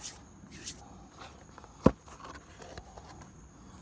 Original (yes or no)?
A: yes